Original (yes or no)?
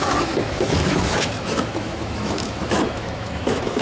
no